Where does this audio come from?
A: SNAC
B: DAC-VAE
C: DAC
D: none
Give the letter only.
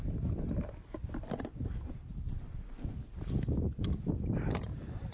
D